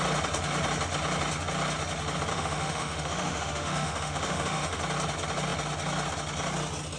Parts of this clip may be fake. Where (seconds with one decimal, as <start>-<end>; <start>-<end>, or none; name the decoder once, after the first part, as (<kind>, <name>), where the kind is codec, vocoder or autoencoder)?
2.3-4.8 (autoencoder, DAC-VAE)